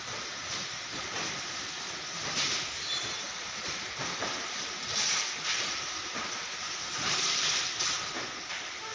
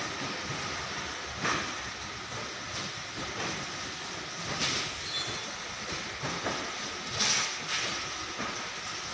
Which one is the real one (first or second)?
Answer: second